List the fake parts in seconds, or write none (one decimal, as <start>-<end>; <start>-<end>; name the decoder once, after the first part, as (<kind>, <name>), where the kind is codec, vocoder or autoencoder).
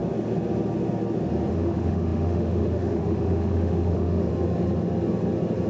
1.5-4.3 (autoencoder, DAC-VAE)